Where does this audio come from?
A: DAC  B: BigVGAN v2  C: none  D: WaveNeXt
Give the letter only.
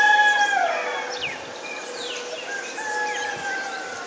C